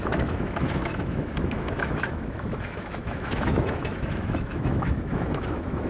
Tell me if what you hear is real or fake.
fake